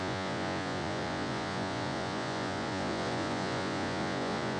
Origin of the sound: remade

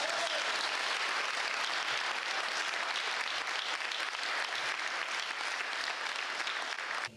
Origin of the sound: recorded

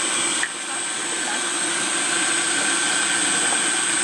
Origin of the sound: recorded